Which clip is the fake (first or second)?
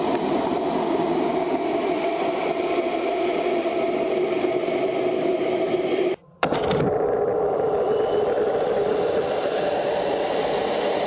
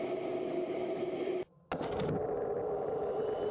first